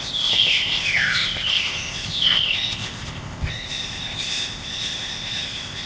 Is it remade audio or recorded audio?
remade